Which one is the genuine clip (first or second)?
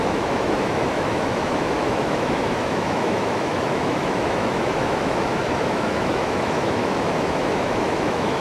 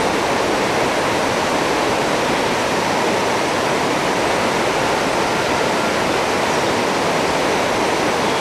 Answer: second